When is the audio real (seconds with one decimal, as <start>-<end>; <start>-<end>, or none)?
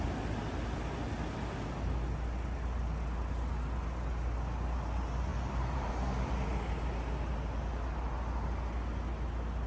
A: 0.0-5.3; 5.9-9.7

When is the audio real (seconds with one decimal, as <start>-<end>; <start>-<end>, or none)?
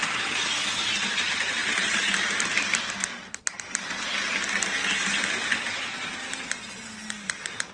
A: 0.7-1.6; 2.7-7.7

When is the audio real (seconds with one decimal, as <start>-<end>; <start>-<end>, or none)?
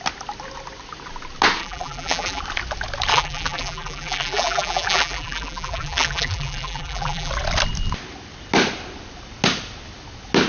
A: 0.0-1.6; 2.4-3.1; 7.3-10.5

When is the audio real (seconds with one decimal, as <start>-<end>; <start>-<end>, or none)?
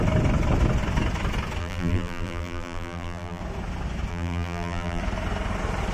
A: 0.0-1.6; 3.4-4.1; 5.0-5.9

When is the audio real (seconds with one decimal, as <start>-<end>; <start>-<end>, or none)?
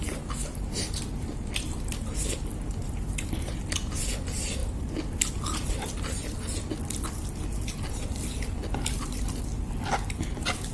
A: 0.0-2.8; 3.6-10.7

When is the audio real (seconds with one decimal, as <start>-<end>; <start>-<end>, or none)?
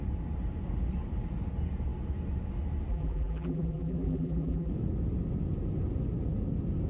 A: 0.0-2.9; 4.7-6.9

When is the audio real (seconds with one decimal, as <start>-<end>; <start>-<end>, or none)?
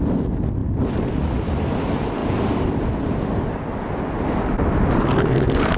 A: 0.0-0.6; 1.3-5.8